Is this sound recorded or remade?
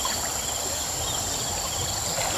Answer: recorded